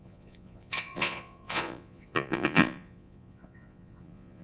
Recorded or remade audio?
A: remade